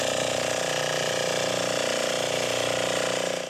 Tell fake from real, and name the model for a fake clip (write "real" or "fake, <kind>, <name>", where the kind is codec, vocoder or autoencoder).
real